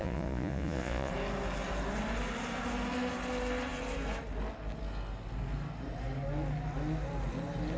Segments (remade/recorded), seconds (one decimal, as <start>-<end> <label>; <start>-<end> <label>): 0.0-1.1 remade; 1.1-7.8 recorded